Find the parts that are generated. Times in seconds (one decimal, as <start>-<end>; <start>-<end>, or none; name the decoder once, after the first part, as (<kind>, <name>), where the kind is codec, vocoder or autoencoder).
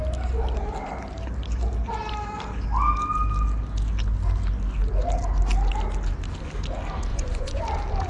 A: 7.1-7.6 (vocoder, Vocos)